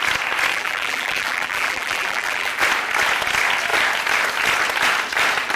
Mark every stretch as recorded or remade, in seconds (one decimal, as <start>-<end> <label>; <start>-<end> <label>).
0.0-0.5 recorded; 0.5-2.5 remade; 2.5-5.6 recorded